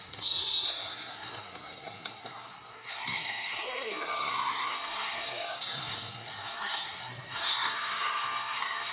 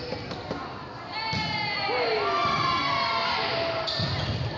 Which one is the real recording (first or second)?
second